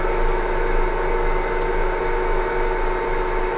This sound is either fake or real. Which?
real